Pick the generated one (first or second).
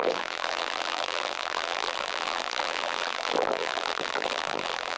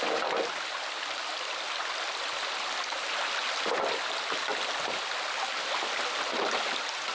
first